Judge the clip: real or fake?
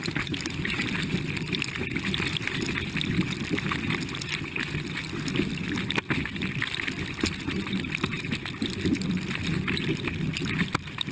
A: real